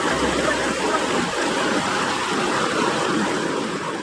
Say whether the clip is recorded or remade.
recorded